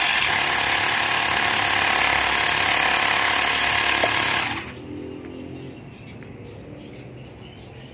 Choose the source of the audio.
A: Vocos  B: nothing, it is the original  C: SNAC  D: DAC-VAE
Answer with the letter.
B